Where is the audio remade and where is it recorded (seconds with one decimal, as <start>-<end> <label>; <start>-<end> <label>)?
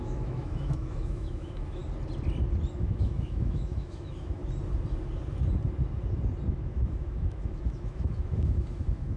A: 0.0-1.8 remade; 1.8-2.7 recorded; 2.7-4.4 remade; 4.4-6.5 recorded; 6.5-9.2 remade